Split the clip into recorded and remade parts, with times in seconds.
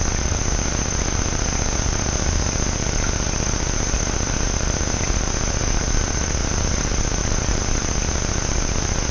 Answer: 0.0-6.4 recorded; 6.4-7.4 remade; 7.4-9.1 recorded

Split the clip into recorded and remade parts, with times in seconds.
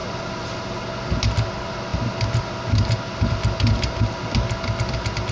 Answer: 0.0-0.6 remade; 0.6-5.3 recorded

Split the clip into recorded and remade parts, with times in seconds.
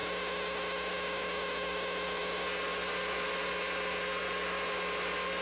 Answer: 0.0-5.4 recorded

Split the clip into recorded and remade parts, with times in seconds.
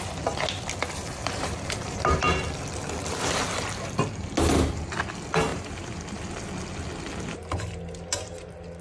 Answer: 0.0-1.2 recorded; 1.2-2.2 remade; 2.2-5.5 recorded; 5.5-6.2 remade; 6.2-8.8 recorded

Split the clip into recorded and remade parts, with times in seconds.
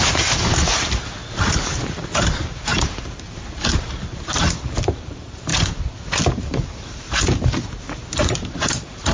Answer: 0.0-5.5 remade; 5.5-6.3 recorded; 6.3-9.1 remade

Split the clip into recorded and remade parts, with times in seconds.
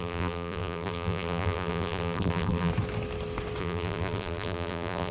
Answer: 0.0-2.7 remade; 2.7-3.6 recorded; 3.6-5.1 remade